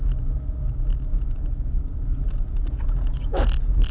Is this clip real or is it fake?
real